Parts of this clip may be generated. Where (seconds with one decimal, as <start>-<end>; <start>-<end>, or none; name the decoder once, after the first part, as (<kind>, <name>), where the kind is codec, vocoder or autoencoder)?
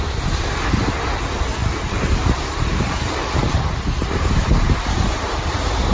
1.6-3.4 (vocoder, BigVGAN v2); 4.0-4.8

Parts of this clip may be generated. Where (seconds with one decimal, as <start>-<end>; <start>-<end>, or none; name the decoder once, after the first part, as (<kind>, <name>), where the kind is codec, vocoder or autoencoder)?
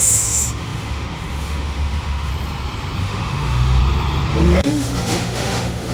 0.0-2.3 (autoencoder, DAC-VAE); 3.0-3.8; 4.3-5.9